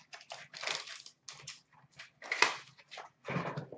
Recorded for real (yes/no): yes